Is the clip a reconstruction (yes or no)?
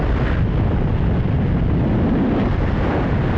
no